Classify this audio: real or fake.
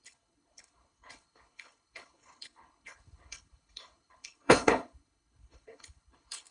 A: fake